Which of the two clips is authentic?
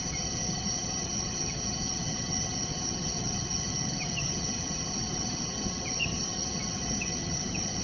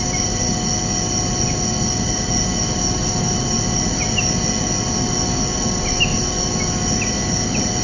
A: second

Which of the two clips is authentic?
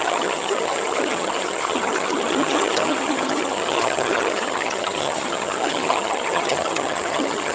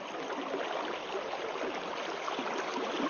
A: second